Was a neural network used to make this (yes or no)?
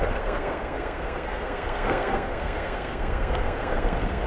yes